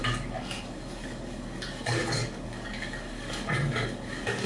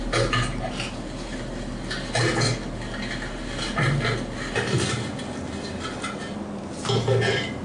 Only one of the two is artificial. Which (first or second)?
first